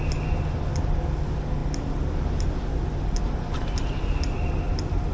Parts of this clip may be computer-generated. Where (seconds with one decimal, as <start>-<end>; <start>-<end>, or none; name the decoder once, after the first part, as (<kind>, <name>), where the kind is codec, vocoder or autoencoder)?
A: none